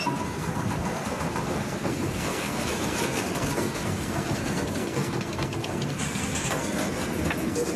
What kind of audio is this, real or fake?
fake